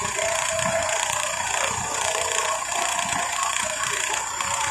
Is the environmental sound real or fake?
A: fake